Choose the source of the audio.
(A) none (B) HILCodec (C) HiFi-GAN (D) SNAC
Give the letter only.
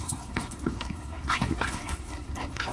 D